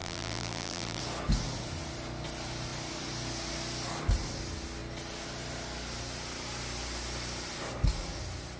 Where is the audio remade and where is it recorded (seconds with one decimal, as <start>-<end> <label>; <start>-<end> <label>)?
0.0-1.0 remade; 1.0-8.6 recorded